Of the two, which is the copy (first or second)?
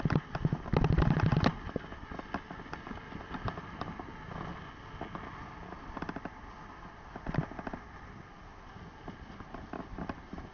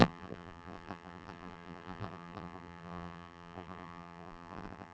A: second